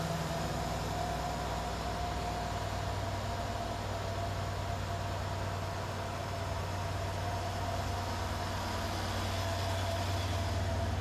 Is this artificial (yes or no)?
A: no